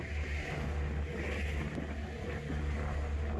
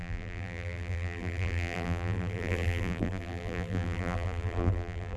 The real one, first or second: first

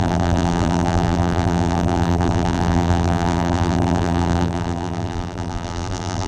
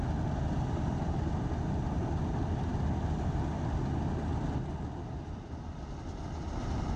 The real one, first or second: second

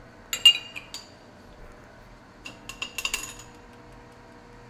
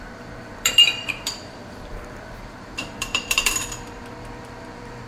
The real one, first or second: first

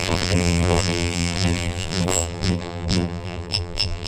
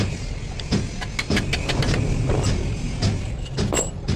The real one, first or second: second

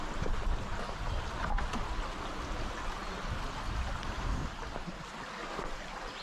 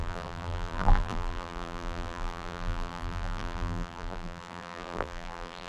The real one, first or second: first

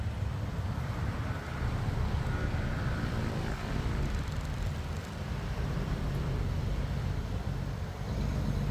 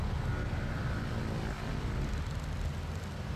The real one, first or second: second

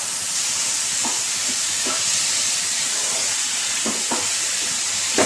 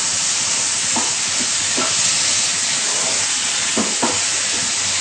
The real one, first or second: second